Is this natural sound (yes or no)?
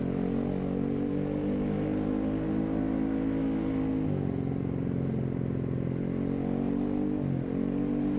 yes